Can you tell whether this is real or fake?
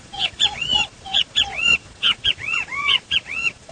fake